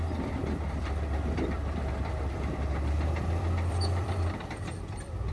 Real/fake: fake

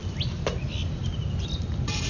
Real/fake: real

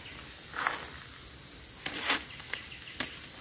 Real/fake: real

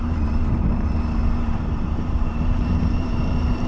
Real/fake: fake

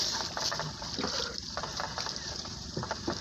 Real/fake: real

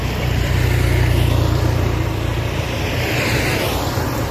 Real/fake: fake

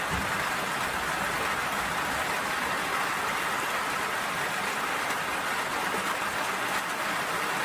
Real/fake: real